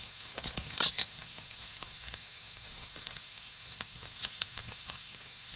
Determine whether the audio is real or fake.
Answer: fake